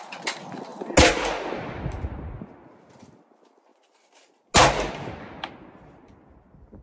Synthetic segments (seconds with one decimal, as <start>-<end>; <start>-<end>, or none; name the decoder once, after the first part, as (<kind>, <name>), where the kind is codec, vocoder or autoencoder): none